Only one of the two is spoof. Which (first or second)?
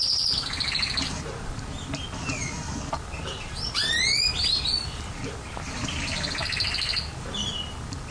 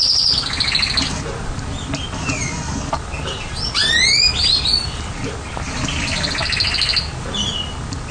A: first